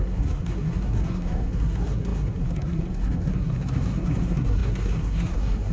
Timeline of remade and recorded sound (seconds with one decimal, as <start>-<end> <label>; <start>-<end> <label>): 0.0-5.7 remade